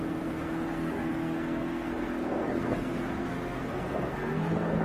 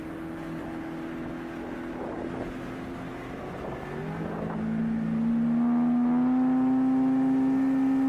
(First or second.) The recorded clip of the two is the second